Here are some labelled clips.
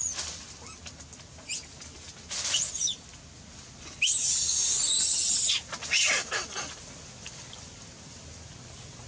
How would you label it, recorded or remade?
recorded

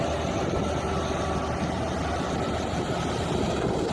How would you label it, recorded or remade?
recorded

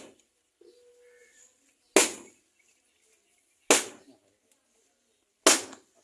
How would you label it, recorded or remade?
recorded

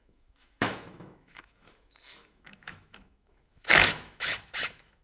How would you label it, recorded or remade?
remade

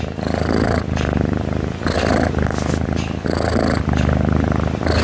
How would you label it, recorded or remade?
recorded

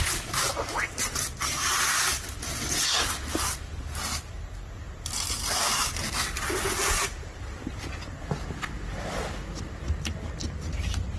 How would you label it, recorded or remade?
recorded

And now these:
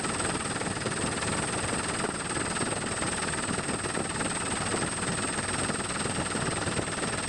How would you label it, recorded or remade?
recorded